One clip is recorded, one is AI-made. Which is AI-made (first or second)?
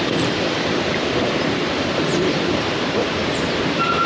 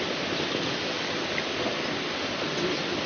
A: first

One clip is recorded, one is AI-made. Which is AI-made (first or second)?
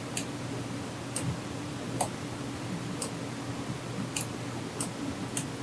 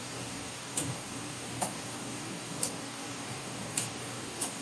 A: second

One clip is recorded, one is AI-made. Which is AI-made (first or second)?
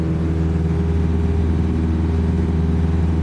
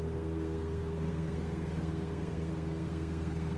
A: second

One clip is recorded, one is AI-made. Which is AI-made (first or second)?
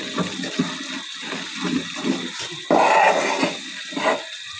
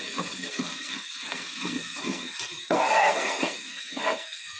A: second